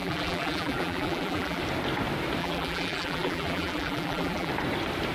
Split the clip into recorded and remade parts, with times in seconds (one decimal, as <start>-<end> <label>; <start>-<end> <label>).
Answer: 0.0-1.6 remade; 1.6-2.4 recorded; 2.4-4.5 remade; 4.5-5.1 recorded